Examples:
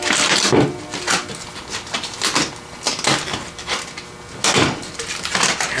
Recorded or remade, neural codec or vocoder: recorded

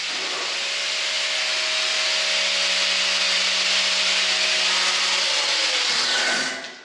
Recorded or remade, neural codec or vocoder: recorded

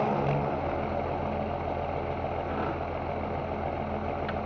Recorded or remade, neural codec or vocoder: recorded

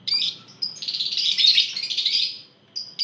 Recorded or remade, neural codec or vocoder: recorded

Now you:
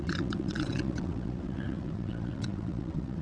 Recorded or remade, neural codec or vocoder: remade, vocoder, WaveNeXt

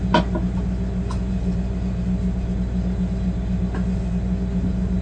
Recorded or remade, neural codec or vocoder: recorded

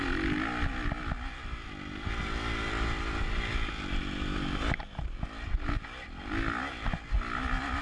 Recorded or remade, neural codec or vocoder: recorded